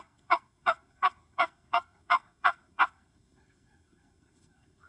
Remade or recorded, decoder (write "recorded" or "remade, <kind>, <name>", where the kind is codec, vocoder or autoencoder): remade, codec, SNAC